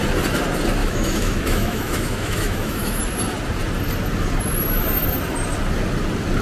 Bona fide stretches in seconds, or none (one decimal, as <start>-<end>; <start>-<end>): 0.0-0.8; 3.0-6.4